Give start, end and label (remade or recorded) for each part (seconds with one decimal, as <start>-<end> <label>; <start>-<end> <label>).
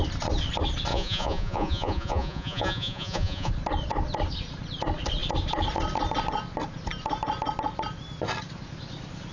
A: 0.0-0.9 recorded; 0.9-3.5 remade; 3.5-9.3 recorded